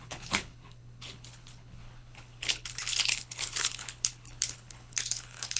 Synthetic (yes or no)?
yes